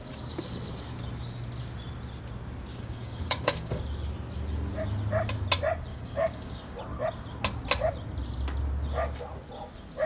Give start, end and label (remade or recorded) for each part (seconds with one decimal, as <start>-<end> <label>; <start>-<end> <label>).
0.0-2.7 recorded; 2.7-3.8 remade; 3.8-5.9 recorded; 5.9-6.8 remade; 6.8-10.1 recorded